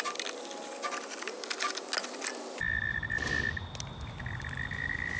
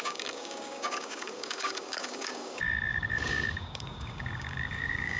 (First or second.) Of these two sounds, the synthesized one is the second